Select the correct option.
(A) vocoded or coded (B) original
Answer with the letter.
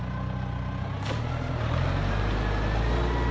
B